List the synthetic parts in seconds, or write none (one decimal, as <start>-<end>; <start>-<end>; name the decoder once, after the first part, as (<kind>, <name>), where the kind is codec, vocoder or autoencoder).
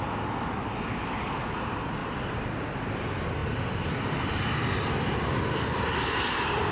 2.0-2.8 (vocoder, BigVGAN v2); 3.4-4.4